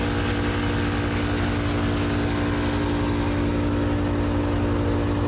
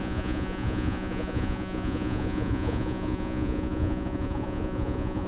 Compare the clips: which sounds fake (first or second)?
second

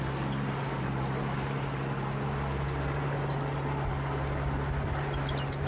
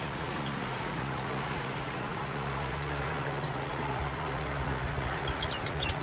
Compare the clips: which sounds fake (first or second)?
second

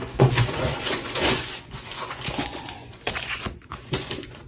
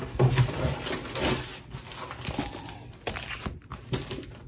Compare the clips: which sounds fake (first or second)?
first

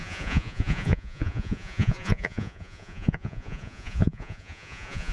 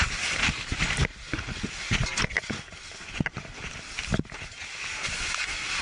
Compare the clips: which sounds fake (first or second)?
first